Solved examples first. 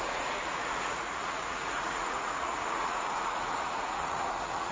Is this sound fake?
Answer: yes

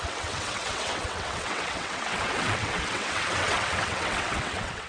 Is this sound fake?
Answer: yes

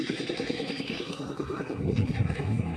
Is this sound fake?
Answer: yes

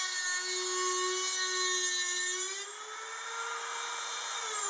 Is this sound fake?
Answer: no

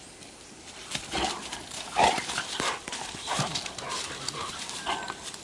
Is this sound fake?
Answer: no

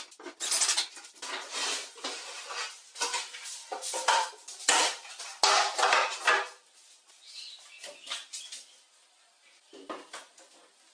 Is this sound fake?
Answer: no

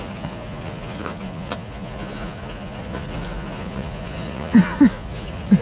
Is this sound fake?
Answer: yes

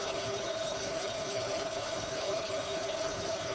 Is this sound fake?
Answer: yes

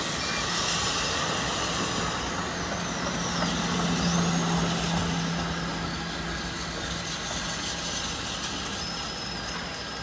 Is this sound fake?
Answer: no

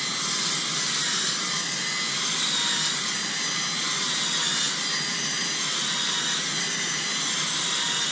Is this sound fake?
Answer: no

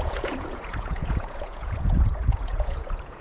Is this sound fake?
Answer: yes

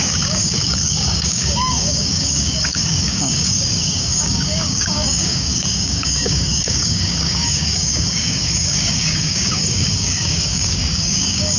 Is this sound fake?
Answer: yes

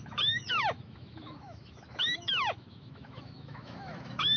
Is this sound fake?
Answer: yes